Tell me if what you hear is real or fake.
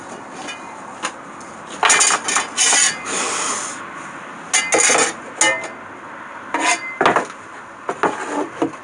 real